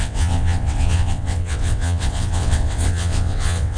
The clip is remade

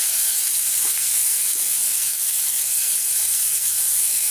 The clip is remade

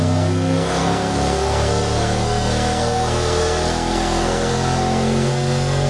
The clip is remade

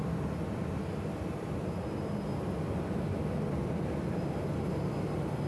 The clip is recorded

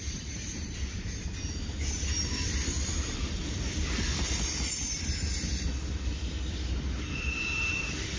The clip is remade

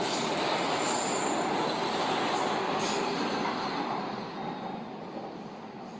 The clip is recorded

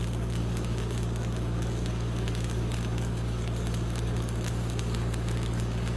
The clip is remade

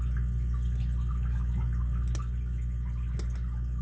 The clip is recorded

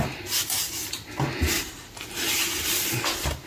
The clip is recorded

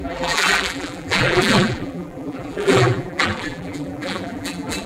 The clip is remade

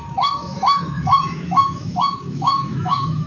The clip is remade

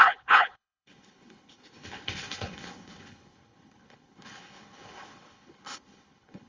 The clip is remade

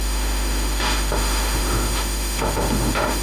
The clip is remade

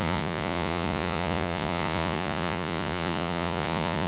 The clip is remade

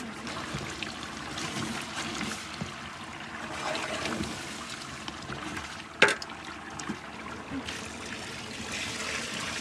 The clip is recorded